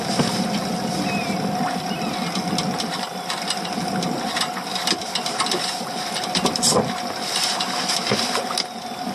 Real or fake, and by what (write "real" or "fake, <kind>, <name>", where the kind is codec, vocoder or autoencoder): real